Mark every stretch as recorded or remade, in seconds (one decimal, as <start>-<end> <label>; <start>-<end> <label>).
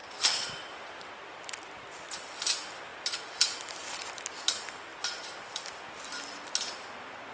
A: 0.0-1.1 remade; 1.1-4.9 recorded; 4.9-6.5 remade; 6.5-7.3 recorded